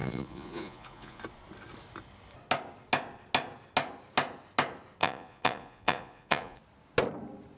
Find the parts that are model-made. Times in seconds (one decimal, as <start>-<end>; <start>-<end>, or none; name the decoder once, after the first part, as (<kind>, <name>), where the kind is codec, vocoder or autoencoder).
0.0-1.2 (vocoder, Vocos); 5.0-6.6